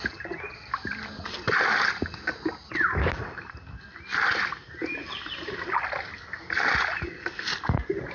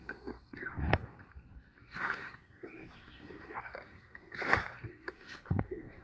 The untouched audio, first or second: first